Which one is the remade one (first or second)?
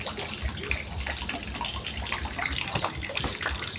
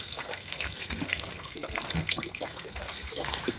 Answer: second